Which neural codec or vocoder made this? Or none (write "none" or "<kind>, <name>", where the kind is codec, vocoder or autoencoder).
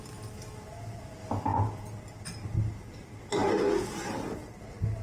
none